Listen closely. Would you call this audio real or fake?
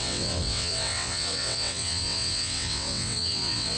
fake